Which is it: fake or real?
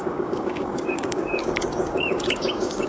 fake